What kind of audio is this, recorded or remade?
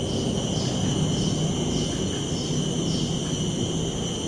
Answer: recorded